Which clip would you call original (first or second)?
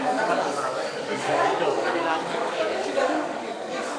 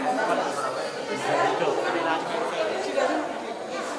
second